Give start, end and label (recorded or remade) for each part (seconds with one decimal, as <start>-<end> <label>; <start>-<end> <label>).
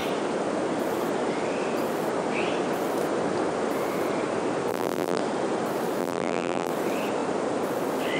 0.0-4.7 recorded; 4.7-5.2 remade; 5.2-6.0 recorded; 6.0-6.7 remade; 6.7-8.2 recorded